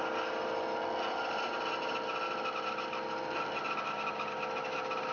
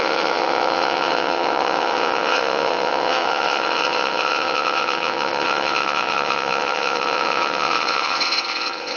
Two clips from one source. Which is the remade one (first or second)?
second